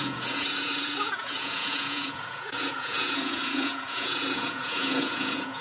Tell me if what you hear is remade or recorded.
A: remade